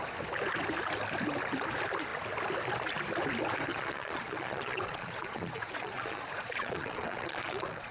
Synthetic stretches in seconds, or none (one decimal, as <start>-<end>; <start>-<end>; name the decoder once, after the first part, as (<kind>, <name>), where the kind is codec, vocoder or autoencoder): 3.7-7.9 (vocoder, Vocos)